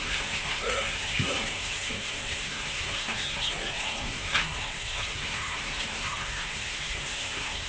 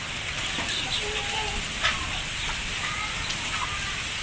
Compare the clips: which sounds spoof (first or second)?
first